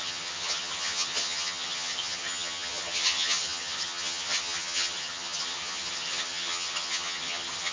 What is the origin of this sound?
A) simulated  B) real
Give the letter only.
A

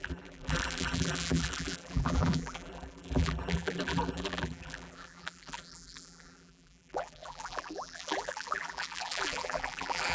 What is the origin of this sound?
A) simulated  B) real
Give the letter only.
A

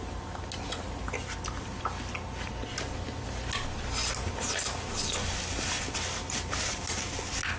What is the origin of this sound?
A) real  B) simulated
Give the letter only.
A